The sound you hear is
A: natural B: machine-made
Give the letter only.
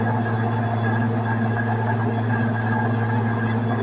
A